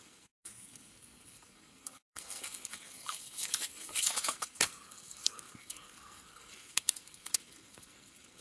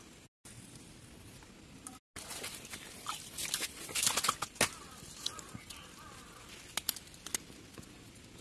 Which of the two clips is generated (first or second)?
first